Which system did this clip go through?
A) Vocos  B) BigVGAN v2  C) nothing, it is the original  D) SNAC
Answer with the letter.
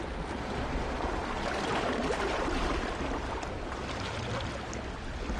C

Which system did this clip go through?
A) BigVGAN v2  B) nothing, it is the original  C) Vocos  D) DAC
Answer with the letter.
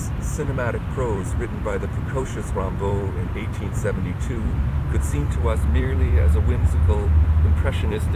A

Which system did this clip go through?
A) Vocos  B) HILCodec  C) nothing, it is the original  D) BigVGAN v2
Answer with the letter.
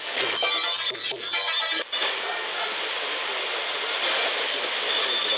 C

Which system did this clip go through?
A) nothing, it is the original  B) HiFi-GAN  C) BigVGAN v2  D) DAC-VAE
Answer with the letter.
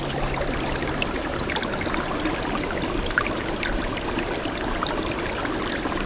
A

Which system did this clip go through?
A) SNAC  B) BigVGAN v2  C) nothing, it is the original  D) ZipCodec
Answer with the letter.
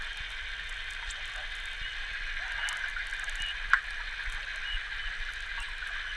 C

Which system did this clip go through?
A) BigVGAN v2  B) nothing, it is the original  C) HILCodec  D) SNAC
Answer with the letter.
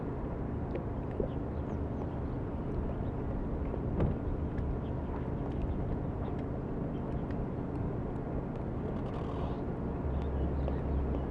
B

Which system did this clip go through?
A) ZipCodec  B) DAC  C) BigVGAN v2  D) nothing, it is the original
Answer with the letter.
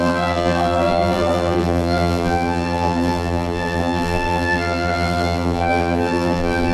C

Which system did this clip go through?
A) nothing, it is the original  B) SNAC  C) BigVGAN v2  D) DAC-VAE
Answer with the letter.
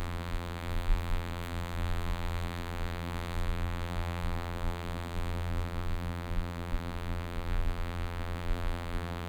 C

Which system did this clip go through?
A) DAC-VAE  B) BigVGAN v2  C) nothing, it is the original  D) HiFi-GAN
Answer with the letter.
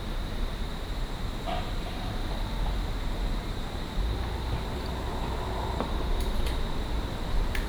B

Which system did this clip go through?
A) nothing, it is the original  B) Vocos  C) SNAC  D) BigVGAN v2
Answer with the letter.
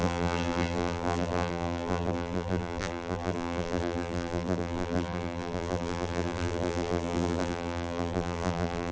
D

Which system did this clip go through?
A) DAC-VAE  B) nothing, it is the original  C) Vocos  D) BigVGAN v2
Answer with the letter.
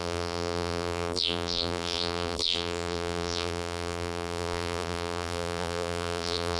D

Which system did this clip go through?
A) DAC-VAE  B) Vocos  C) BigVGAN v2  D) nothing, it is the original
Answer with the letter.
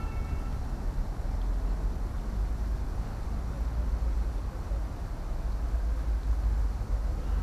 D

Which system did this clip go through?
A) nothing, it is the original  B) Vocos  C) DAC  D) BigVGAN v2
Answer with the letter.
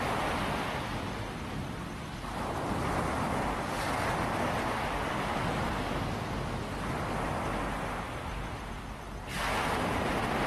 A